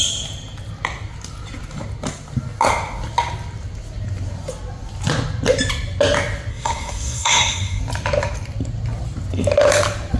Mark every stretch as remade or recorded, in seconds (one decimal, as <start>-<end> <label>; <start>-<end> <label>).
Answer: 0.0-6.5 recorded; 6.5-7.8 remade; 7.8-10.2 recorded

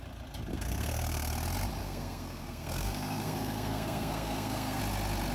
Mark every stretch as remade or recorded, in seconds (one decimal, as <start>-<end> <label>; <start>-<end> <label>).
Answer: 0.0-0.5 recorded; 0.5-1.3 remade; 1.3-1.8 recorded; 1.8-4.8 remade; 4.8-5.3 recorded

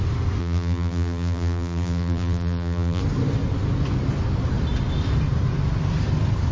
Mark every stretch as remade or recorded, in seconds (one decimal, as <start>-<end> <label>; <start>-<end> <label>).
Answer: 0.0-0.4 recorded; 0.4-3.0 remade; 3.0-6.5 recorded

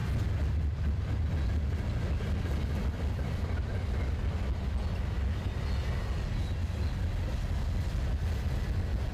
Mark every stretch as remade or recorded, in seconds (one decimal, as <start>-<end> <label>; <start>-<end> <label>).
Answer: 0.0-9.1 recorded